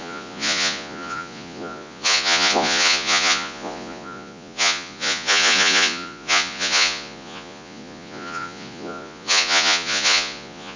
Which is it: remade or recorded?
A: remade